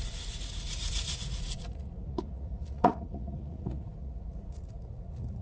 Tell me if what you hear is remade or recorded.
remade